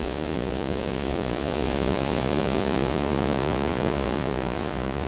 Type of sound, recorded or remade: remade